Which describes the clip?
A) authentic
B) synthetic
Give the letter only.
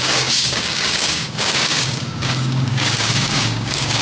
B